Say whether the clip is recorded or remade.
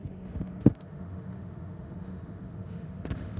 remade